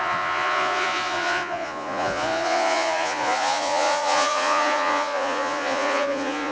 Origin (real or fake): fake